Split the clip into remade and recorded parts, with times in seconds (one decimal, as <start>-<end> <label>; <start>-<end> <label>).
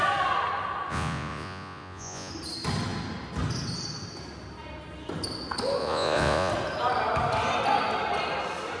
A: 0.0-0.9 recorded; 0.9-2.3 remade; 2.3-5.8 recorded; 5.8-6.5 remade; 6.5-8.8 recorded